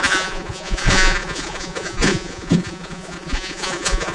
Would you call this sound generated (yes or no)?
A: yes